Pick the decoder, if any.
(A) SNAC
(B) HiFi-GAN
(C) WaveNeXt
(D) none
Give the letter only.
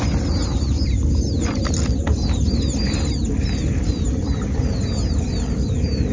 D